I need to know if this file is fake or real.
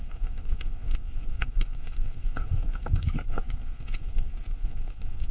fake